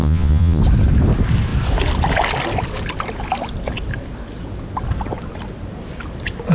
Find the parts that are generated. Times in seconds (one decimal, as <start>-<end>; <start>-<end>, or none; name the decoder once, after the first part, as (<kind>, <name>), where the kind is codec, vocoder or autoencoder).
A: 0.0-0.6 (vocoder, Vocos)